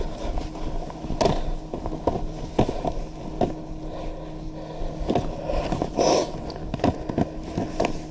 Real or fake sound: real